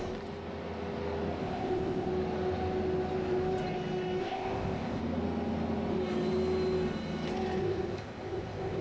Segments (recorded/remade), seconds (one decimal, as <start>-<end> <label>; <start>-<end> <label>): 0.0-1.4 recorded; 1.4-2.1 remade; 2.1-4.2 recorded; 4.2-5.0 remade; 5.0-7.6 recorded; 7.6-8.8 remade

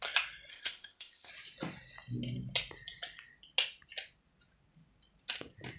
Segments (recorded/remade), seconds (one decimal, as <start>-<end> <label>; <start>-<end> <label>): 0.0-0.5 recorded; 0.5-1.3 remade; 1.3-5.8 recorded

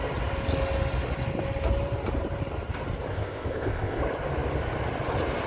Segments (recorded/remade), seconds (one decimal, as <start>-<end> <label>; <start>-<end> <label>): 0.0-3.1 recorded; 3.1-4.0 remade; 4.0-5.5 recorded

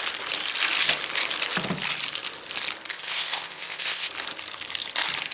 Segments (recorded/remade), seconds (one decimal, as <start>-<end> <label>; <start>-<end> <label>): 0.0-2.9 recorded; 2.9-4.1 remade; 4.1-5.3 recorded

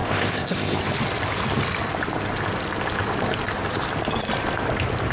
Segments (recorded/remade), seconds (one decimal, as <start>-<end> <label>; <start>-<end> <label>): 0.0-0.8 remade; 0.8-5.1 recorded

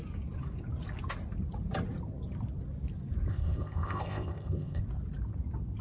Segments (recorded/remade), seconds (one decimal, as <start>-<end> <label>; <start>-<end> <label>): 0.0-3.3 recorded; 3.3-4.8 remade; 4.8-5.8 recorded